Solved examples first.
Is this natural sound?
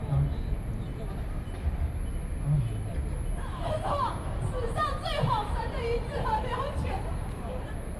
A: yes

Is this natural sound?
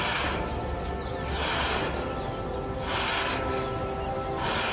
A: yes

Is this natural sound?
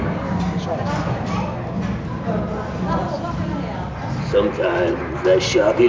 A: yes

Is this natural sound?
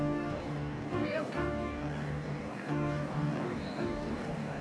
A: no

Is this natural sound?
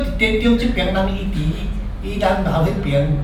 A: yes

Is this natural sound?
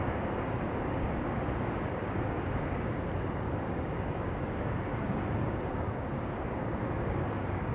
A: no